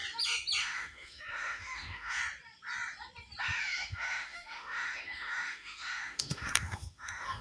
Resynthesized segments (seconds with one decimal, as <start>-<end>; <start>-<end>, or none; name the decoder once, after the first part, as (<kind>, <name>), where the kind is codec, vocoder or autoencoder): 0.6-2.2 (autoencoder, DAC-VAE); 3.4-7.4